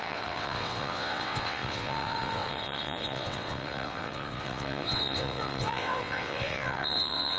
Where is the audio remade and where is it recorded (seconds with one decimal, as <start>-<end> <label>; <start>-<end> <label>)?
0.0-7.4 remade